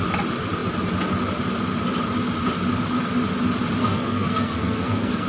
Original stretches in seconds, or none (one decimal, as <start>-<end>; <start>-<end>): 0.0-3.8